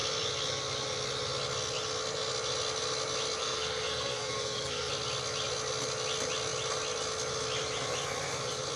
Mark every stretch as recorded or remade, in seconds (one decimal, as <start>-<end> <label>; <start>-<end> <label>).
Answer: 0.0-3.4 recorded; 3.4-4.9 remade; 4.9-8.8 recorded